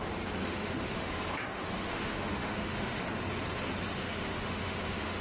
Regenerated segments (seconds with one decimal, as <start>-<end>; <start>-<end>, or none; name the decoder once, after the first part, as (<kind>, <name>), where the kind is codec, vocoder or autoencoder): 0.4-1.1 (autoencoder, DAC-VAE); 1.5-3.2; 4.0-5.2